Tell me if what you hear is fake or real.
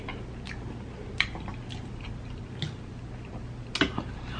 real